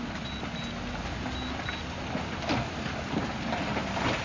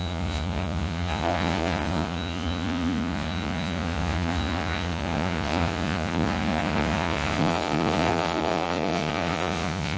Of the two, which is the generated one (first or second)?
second